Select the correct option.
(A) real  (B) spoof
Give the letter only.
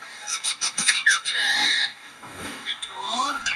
B